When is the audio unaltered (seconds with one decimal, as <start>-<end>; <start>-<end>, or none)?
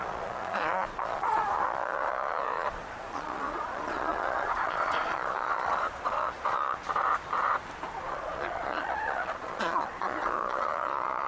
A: 6.8-8.1